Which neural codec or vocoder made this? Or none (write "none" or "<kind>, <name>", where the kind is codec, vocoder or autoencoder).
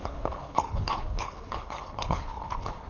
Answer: codec, HILCodec